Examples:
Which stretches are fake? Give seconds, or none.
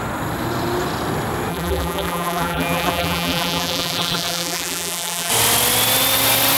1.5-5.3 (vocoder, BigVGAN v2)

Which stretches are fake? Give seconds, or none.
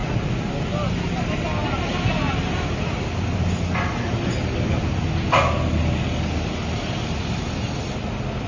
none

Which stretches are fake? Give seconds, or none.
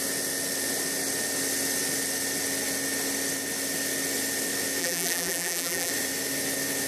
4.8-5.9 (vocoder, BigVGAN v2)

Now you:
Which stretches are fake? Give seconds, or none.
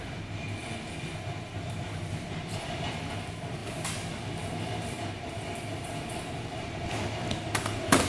0.0-0.6 (vocoder, BigVGAN v2); 1.1-8.1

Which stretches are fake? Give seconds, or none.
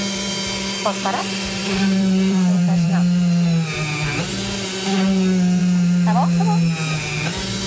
1.2-2.9 (vocoder, BigVGAN v2)